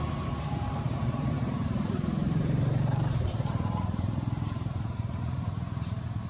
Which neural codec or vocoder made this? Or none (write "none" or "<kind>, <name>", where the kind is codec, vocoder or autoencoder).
vocoder, BigVGAN v2